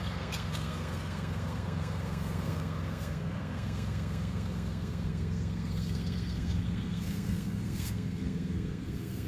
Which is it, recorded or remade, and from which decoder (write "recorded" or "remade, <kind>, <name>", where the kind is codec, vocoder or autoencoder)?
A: remade, codec, SNAC